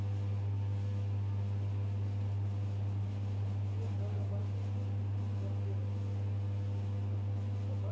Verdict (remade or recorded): recorded